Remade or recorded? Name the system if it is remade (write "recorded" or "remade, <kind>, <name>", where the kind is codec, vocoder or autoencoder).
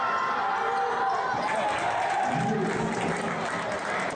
recorded